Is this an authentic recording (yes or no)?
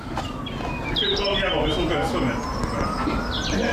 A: yes